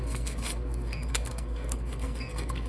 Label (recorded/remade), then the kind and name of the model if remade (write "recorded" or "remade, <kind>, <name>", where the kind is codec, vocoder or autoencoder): remade, codec, SNAC